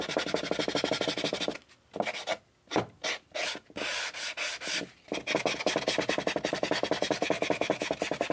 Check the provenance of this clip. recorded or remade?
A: recorded